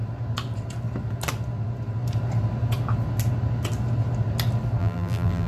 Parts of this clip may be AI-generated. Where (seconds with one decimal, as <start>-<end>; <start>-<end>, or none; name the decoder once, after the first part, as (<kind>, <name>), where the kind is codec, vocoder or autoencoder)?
4.8-5.5 (vocoder, BigVGAN v2)